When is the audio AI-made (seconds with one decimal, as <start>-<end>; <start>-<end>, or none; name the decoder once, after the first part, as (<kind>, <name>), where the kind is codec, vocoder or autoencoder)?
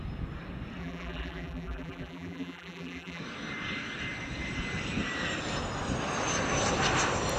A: 0.8-3.2 (vocoder, BigVGAN v2)